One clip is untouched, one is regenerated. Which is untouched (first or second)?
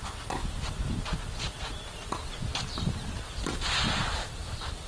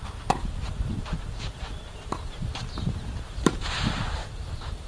first